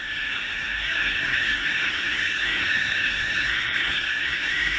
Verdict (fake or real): fake